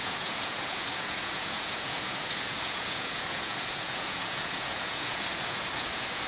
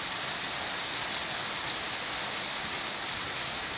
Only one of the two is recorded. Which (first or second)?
second